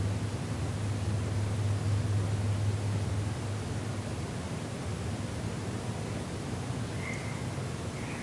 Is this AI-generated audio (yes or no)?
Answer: no